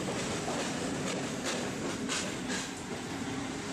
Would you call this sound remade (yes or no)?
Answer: no